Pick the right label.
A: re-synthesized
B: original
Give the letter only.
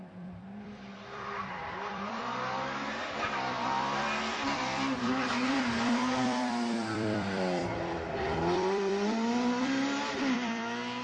A